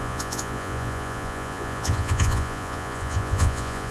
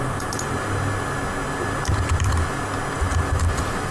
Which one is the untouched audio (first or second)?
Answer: second